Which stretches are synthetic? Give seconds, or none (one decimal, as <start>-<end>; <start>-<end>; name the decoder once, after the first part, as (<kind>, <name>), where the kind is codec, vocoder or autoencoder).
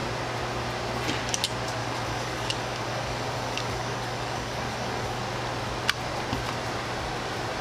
1.8-5.2 (codec, DAC)